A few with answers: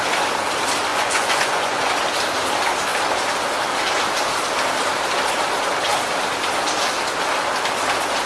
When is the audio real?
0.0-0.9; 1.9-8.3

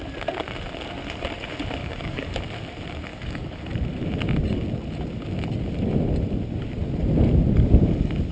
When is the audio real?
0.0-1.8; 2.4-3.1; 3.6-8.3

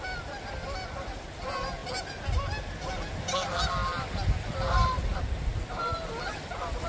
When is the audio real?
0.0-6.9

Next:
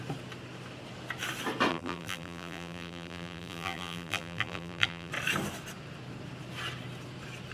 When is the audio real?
0.0-1.7; 5.1-7.5